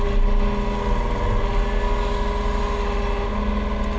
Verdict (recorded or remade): recorded